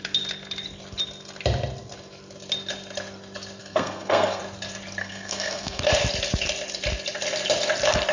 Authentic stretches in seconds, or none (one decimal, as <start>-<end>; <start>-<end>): 0.0-3.6; 4.4-5.0; 5.8-8.1